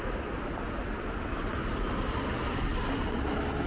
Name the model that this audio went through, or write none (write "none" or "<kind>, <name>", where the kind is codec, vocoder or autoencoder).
none